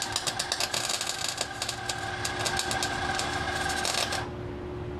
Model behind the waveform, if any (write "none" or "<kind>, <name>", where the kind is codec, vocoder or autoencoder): none